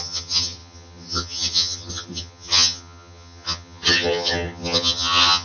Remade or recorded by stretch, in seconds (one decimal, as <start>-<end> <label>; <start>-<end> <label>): 0.0-5.4 remade

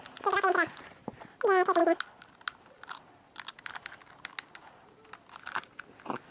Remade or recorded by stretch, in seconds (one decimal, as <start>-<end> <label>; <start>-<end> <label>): 0.0-6.3 recorded

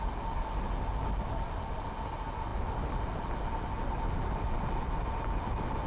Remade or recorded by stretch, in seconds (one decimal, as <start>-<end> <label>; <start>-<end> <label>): 0.0-5.9 recorded

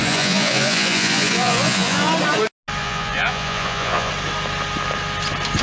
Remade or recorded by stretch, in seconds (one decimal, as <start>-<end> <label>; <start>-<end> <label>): 0.0-2.1 remade; 2.1-2.8 recorded; 2.8-4.1 remade; 4.1-5.6 recorded